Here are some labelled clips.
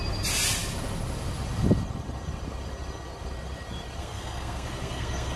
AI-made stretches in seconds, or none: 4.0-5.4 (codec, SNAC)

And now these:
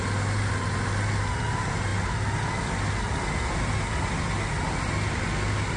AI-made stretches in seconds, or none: none

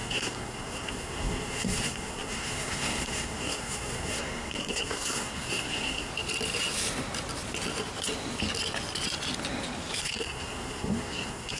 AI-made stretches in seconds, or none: 0.0-6.1 (codec, SNAC); 10.0-11.6

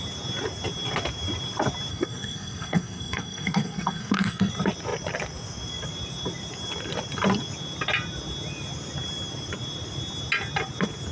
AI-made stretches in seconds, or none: 1.9-4.5 (codec, SNAC)

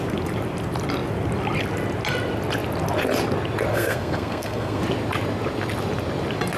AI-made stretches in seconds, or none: 3.7-4.8 (codec, SNAC)

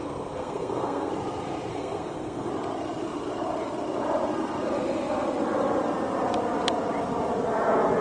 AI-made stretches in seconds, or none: 0.0-1.1 (codec, SNAC); 1.7-2.5

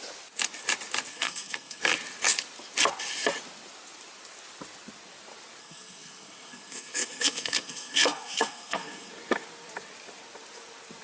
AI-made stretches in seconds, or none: 1.1-1.8 (codec, SNAC); 5.6-9.1

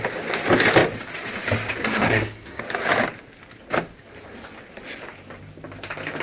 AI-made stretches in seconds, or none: 1.8-2.6 (codec, SNAC)